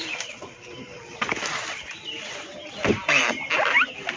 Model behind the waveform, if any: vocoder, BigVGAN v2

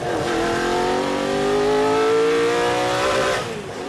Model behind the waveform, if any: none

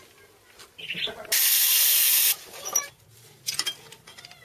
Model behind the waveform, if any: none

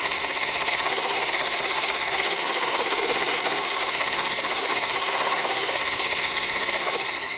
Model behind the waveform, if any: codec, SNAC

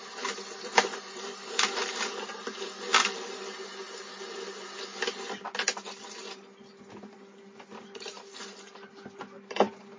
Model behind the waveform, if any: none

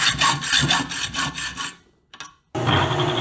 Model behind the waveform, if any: none